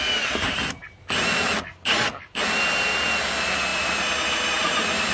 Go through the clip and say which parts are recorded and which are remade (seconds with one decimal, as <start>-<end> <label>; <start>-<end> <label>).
0.0-5.1 recorded